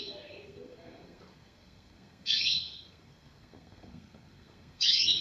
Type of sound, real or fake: fake